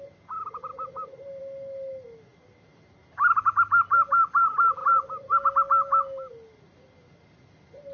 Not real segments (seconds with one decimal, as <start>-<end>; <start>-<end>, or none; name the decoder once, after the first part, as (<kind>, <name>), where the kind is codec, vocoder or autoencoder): none